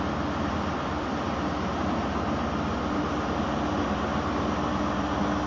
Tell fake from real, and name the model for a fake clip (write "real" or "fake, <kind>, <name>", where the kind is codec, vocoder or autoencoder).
real